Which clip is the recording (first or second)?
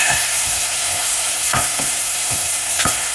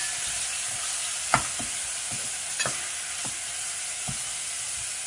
second